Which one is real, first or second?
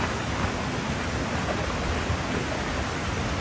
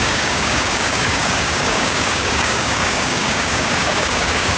first